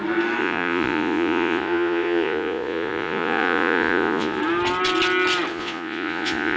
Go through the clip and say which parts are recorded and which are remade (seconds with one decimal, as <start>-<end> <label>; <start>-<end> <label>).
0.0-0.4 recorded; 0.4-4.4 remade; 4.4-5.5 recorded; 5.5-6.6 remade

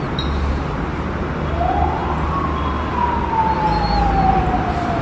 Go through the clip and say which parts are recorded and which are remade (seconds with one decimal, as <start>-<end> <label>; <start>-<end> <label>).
0.0-5.0 recorded

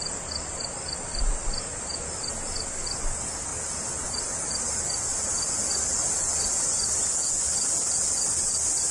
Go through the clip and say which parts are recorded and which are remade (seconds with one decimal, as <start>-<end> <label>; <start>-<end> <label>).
0.0-8.9 recorded

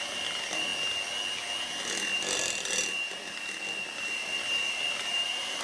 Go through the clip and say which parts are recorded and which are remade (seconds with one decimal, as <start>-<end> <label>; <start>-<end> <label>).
0.0-0.7 remade; 0.7-2.1 recorded; 2.1-5.6 remade

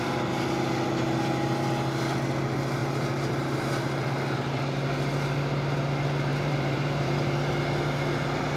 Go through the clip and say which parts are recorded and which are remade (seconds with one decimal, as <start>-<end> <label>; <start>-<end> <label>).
0.0-2.8 recorded; 2.8-3.6 remade; 3.6-6.3 recorded; 6.3-7.5 remade; 7.5-8.6 recorded

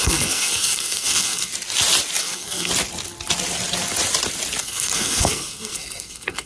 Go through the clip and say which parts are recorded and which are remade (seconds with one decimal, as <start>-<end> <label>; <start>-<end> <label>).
0.0-1.5 remade; 1.5-2.2 recorded; 2.2-2.7 remade; 2.7-4.6 recorded; 4.6-6.5 remade

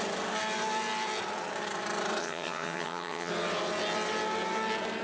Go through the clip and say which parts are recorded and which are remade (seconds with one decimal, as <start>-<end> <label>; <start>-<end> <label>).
0.0-2.2 recorded; 2.2-3.3 remade; 3.3-5.0 recorded

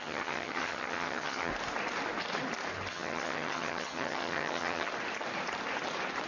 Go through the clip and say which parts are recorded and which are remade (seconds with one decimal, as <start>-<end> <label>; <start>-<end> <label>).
0.0-1.5 remade; 1.5-2.9 recorded; 2.9-4.9 remade; 4.9-6.3 recorded